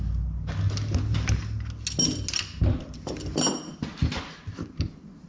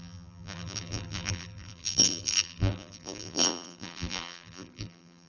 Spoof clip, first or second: second